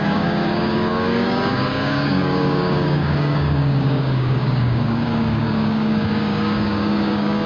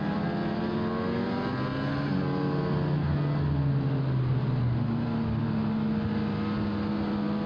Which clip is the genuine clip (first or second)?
second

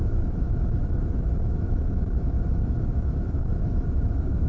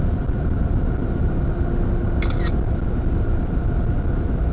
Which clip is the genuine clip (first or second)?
second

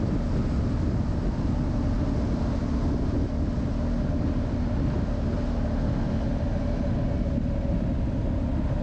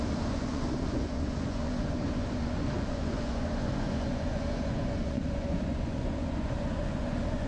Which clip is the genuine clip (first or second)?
first